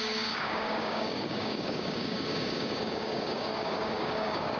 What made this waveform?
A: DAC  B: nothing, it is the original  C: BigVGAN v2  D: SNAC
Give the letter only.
A